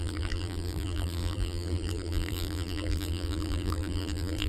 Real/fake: fake